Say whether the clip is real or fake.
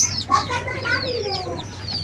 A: fake